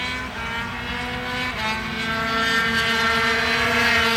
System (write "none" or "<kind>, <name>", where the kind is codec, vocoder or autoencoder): none